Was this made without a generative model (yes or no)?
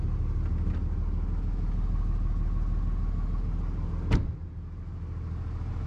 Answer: yes